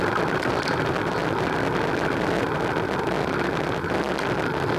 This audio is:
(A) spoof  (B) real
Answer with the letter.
B